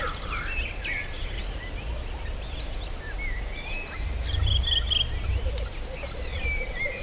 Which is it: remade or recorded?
recorded